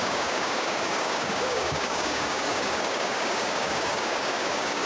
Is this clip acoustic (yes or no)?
no